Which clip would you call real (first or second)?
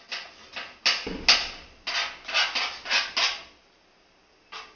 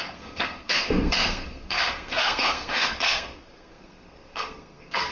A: first